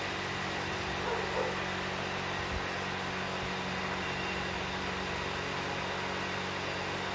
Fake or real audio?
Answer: real